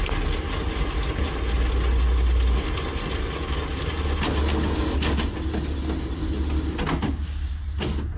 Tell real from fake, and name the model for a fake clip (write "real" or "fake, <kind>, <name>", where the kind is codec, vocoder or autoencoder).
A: real